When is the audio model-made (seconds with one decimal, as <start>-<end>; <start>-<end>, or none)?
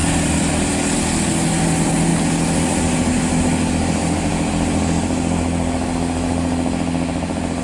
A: 0.0-0.5